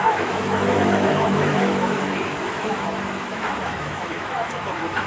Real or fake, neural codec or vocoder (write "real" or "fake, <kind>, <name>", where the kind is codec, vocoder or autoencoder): fake, autoencoder, DAC-VAE